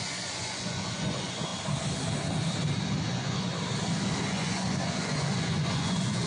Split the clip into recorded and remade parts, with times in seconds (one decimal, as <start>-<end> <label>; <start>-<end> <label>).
0.0-1.5 remade; 1.5-3.1 recorded; 3.1-3.5 remade; 3.5-4.2 recorded; 4.2-6.3 remade